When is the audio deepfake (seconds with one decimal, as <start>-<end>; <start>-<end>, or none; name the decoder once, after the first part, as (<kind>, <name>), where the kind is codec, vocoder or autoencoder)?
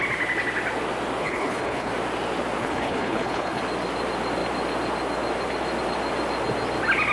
1.2-1.9 (codec, HILCodec); 2.6-3.6